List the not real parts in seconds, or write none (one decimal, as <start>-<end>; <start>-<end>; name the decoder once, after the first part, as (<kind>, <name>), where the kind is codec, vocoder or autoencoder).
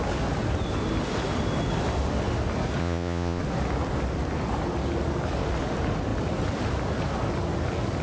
2.8-3.4 (vocoder, Vocos)